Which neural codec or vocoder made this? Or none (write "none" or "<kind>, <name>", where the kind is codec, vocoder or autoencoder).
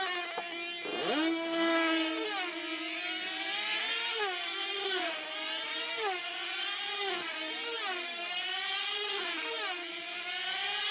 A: none